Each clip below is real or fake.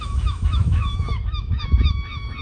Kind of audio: fake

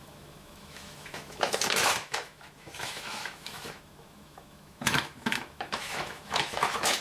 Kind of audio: fake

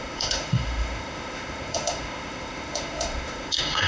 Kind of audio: fake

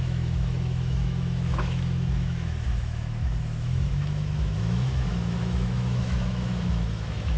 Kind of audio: fake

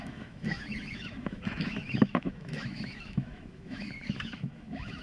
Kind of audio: fake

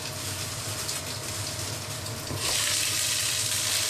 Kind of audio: real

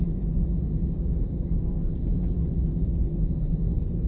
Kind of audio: real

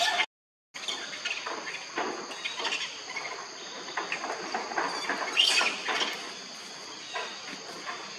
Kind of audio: real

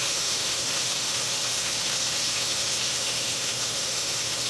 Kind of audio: fake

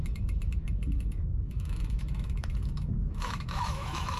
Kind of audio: fake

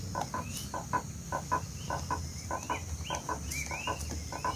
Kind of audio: real